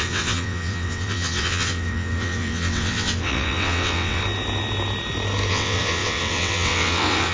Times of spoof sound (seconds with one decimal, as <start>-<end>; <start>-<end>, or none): 0.0-4.2; 5.5-7.3